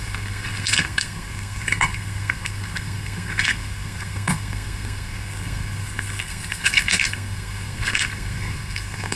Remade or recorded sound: remade